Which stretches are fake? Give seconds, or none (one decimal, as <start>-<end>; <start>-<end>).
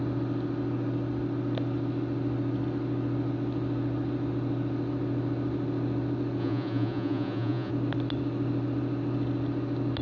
6.4-7.7